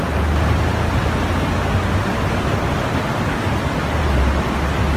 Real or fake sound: real